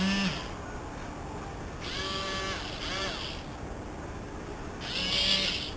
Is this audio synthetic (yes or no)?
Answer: no